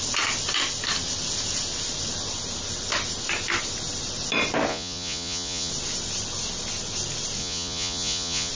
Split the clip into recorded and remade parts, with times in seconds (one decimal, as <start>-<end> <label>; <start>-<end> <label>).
0.0-4.7 recorded; 4.7-5.7 remade; 5.7-7.4 recorded; 7.4-8.5 remade